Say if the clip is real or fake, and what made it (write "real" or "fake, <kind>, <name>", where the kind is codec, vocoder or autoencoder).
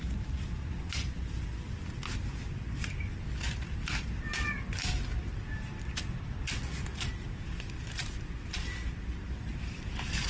real